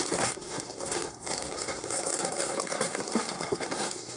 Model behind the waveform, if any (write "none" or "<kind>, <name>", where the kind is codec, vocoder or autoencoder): codec, SNAC